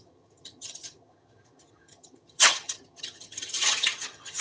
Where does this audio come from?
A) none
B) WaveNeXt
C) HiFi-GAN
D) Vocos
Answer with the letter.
C